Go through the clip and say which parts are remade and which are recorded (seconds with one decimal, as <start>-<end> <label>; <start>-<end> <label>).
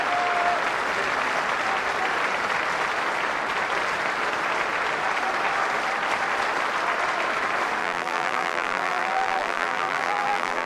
0.0-7.8 recorded; 7.8-10.7 remade